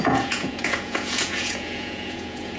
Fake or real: fake